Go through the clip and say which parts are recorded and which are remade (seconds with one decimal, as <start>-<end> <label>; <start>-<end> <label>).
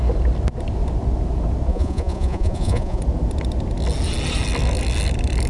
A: 0.0-1.7 recorded; 1.7-3.0 remade; 3.0-5.5 recorded